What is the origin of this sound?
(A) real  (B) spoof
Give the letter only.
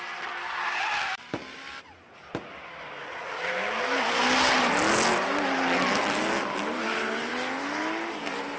A